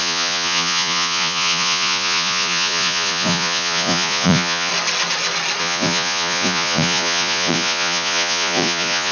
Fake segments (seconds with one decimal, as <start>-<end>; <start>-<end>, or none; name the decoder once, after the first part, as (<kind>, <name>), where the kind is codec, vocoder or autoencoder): 0.0-4.7 (vocoder, Vocos); 5.6-9.1